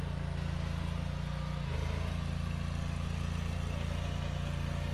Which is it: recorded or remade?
recorded